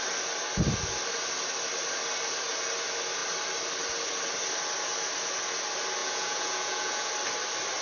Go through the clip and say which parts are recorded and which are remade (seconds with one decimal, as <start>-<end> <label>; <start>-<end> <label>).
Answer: 0.0-6.0 recorded; 6.0-7.1 remade; 7.1-7.8 recorded